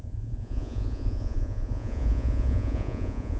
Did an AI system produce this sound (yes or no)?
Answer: yes